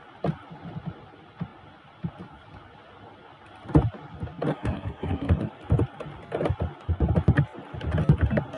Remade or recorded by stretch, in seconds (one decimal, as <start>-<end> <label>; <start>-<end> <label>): 0.0-4.5 recorded; 4.5-5.5 remade; 5.5-8.6 recorded